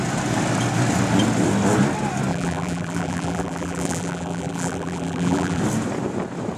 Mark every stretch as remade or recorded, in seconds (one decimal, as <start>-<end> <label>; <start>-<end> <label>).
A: 0.0-2.3 recorded; 2.3-5.6 remade; 5.6-6.6 recorded